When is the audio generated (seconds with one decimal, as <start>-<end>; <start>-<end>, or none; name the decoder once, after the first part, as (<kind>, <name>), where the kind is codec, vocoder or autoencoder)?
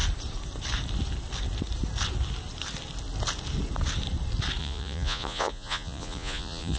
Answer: 4.6-6.8 (vocoder, Vocos)